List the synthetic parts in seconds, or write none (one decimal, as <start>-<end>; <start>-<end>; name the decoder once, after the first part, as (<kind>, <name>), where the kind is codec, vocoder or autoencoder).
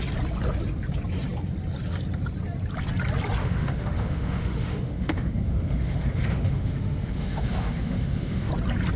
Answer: 3.4-8.5 (autoencoder, DAC-VAE)